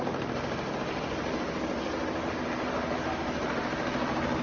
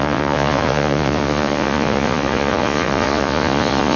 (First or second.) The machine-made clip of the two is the second